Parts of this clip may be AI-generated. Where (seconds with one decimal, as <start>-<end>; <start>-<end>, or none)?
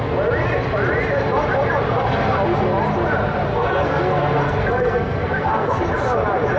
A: 3.5-5.8